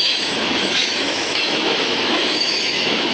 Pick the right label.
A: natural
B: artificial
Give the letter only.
B